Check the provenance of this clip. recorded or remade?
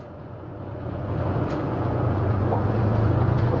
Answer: remade